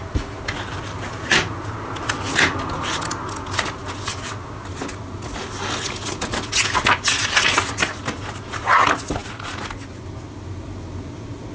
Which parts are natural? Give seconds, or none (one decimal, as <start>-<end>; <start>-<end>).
0.0-11.5

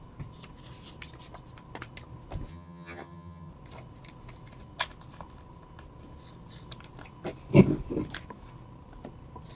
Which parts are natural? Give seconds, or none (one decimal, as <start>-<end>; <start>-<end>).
0.0-2.5; 3.5-9.5

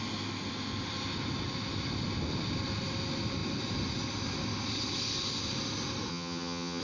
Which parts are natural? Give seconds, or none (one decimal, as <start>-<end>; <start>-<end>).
0.0-6.1

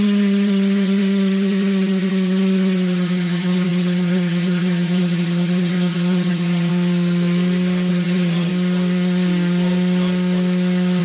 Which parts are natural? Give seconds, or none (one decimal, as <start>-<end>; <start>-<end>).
6.7-7.9; 8.5-11.0